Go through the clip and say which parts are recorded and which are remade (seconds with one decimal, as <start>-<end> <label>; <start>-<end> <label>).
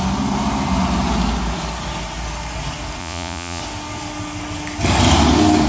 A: 0.0-3.0 recorded; 3.0-3.6 remade; 3.6-5.7 recorded